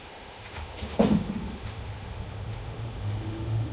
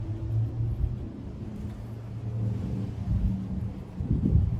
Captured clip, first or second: second